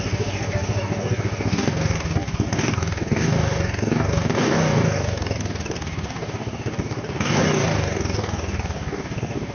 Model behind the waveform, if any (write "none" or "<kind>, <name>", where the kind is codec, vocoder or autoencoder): codec, DAC